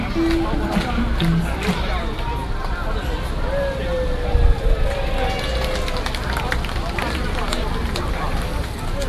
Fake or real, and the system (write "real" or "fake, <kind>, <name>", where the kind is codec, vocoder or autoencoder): real